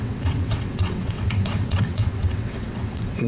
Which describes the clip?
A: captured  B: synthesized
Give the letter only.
B